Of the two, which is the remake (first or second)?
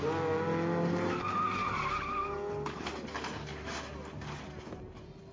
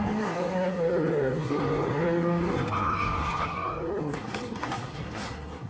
second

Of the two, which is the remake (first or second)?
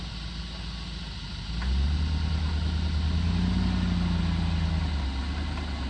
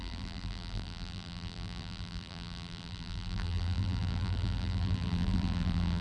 second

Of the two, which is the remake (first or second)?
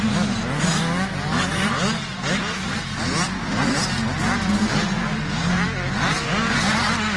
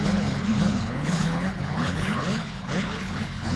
second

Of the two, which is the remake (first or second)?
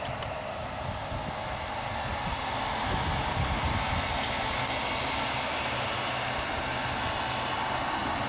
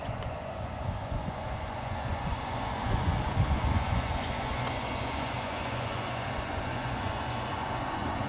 second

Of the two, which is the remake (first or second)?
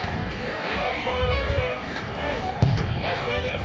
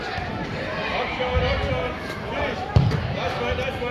first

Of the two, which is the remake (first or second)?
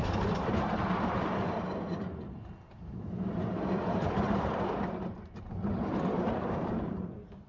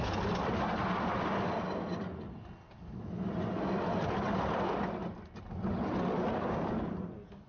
first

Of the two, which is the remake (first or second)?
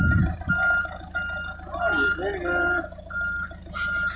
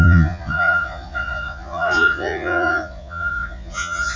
second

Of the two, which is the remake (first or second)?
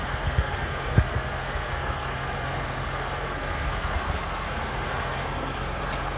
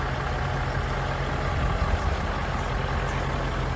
first